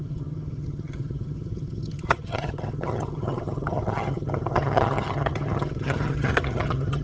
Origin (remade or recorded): remade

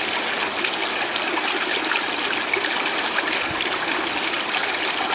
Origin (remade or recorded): recorded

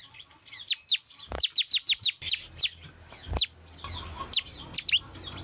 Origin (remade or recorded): recorded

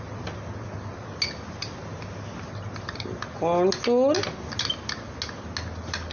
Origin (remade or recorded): recorded